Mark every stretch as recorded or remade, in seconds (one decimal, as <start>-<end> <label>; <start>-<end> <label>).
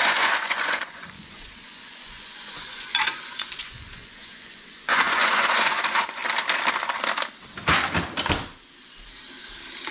0.0-6.2 remade; 6.2-9.9 recorded